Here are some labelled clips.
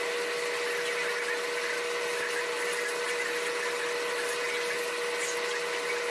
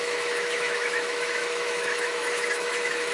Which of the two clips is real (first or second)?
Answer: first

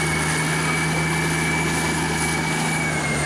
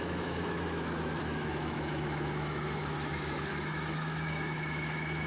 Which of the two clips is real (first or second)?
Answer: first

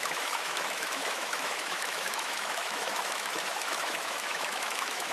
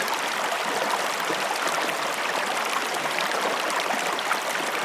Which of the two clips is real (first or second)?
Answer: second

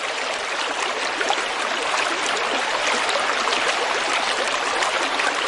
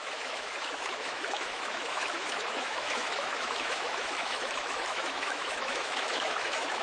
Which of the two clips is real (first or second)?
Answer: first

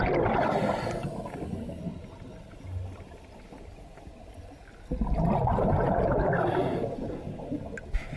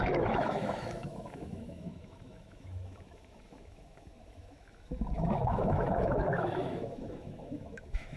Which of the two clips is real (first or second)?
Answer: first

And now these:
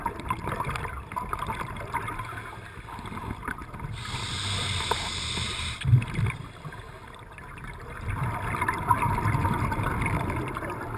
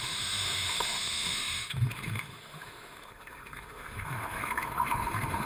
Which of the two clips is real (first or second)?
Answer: first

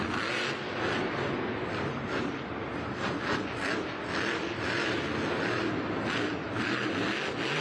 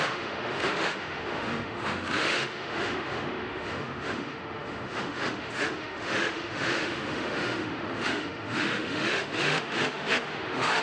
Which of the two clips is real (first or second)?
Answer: first